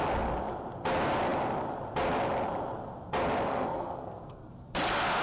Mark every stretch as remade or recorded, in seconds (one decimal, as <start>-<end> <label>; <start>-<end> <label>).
0.0-3.5 recorded; 3.5-4.5 remade; 4.5-5.2 recorded